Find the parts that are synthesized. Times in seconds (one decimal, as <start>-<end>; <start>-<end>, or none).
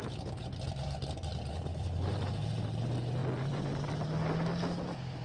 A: 1.7-2.3; 3.2-3.9